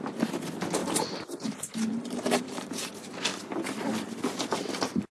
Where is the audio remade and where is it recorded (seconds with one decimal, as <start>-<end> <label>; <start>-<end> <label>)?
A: 0.0-0.8 recorded; 0.8-2.9 remade; 2.9-5.1 recorded